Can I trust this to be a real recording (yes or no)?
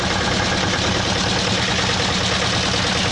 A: yes